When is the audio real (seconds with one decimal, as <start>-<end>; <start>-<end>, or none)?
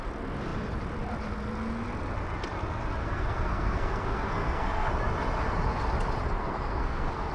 0.0-3.0; 4.9-6.4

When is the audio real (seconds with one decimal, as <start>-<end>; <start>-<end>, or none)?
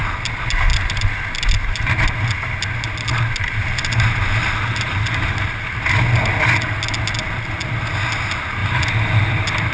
0.0-9.7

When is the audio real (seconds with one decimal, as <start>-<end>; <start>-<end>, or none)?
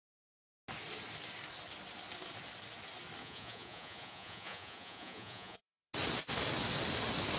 0.0-3.2; 5.8-7.4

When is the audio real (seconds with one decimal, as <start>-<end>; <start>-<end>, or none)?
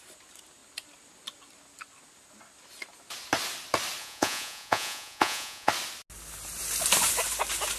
0.0-4.0; 5.7-7.8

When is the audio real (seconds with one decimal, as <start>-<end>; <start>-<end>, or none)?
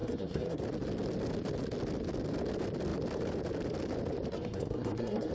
0.6-4.3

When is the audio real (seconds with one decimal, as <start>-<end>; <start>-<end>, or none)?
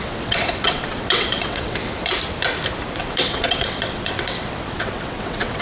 1.8-3.0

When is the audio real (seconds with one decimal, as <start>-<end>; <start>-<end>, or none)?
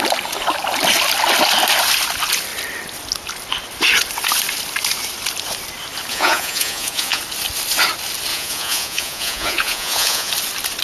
0.0-6.1; 7.2-8.3; 10.3-10.8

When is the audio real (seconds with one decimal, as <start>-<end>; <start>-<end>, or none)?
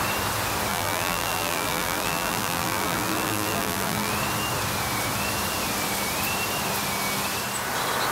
0.0-0.7; 4.1-8.1